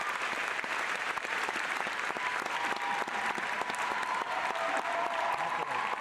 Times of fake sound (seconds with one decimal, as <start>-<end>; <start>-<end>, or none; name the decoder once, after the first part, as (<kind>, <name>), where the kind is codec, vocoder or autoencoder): 0.0-2.3 (vocoder, BigVGAN v2); 3.1-6.0